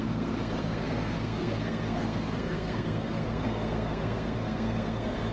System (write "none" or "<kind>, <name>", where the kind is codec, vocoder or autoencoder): codec, SNAC